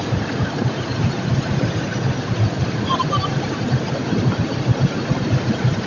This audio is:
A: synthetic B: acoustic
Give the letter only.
B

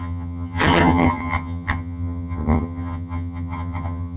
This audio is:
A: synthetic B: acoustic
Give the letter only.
A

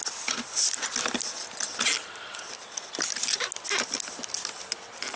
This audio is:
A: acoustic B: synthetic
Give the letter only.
A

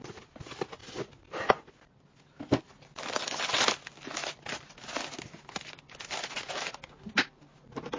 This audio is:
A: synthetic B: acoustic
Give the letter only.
B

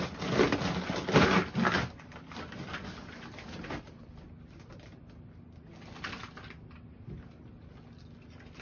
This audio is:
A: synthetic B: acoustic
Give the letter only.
B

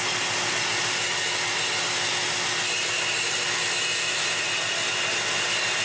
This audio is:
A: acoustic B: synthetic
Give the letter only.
A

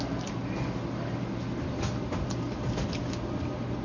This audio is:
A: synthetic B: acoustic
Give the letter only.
B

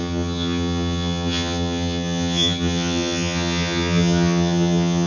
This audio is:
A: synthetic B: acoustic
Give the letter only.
A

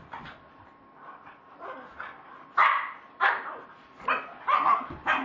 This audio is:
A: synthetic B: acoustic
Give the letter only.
B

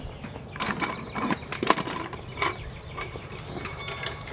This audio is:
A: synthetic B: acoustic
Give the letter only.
B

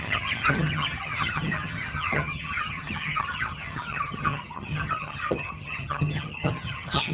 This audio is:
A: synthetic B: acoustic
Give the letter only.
A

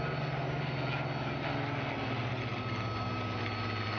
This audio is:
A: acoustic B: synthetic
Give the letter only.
A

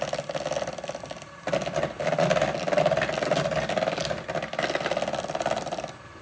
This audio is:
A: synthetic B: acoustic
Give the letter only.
B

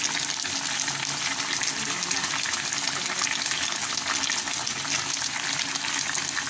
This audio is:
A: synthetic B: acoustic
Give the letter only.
B